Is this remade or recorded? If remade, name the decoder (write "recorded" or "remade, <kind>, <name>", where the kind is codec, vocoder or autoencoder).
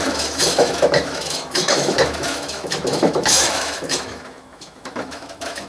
remade, autoencoder, DAC-VAE